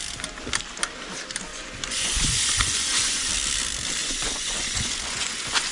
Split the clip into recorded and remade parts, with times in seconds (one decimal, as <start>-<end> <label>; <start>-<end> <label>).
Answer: 0.0-1.5 recorded; 1.5-3.3 remade; 3.3-4.0 recorded; 4.0-5.7 remade